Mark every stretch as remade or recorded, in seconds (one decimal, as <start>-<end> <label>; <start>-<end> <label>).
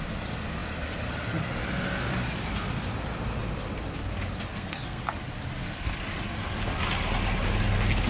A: 0.0-4.5 recorded; 4.5-5.0 remade; 5.0-8.1 recorded